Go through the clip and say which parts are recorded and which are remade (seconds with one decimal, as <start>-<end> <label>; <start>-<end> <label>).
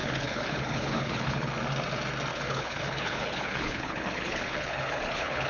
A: 0.0-1.5 remade; 1.5-2.3 recorded; 2.3-5.5 remade